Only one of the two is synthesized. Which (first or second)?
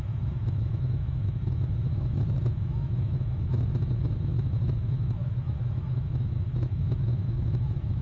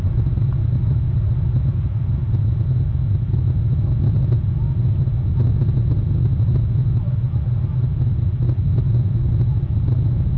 first